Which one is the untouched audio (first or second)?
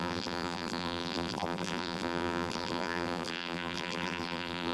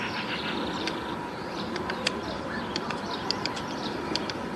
second